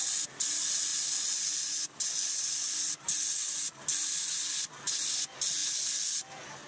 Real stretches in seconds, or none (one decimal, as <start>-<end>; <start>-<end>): 0.0-6.7